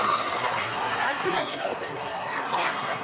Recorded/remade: remade